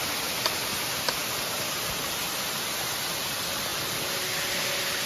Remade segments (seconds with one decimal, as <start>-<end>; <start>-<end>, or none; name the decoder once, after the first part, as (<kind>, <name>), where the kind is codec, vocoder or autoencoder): none